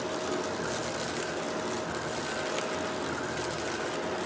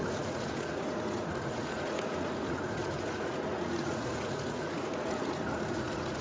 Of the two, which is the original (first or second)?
first